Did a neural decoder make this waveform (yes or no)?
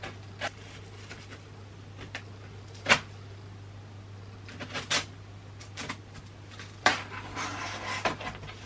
no